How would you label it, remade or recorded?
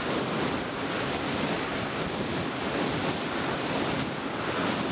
recorded